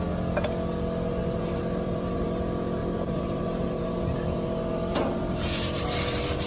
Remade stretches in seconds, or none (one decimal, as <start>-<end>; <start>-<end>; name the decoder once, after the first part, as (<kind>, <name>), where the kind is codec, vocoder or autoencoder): 1.2-2.4 (vocoder, BigVGAN v2); 2.8-6.5